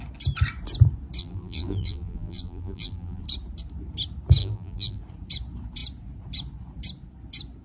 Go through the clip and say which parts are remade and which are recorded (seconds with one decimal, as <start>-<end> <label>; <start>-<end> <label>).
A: 0.0-1.2 recorded; 1.2-3.2 remade; 3.2-4.4 recorded; 4.4-5.0 remade; 5.0-7.6 recorded